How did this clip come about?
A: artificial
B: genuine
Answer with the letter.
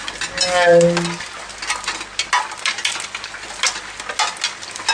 B